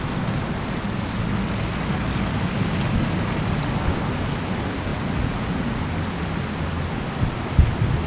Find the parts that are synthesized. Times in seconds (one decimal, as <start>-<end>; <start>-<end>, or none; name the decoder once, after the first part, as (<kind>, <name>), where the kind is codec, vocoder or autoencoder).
4.9-5.8 (vocoder, Vocos)